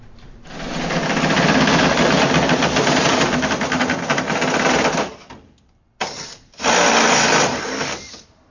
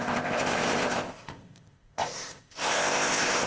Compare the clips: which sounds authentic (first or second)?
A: first